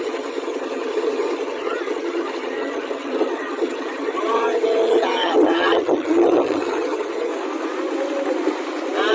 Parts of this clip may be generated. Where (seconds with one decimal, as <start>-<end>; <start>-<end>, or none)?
0.0-7.3